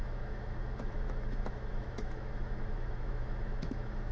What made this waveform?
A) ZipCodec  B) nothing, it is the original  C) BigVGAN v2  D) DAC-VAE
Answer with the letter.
D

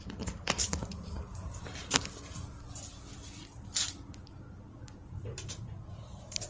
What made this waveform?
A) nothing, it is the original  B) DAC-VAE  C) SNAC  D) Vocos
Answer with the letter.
A